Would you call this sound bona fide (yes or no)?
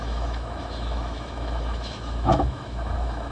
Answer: no